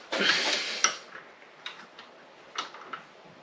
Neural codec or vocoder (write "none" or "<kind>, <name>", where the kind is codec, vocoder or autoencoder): none